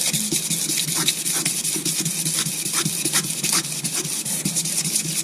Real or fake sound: real